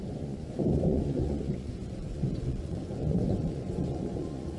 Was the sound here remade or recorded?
remade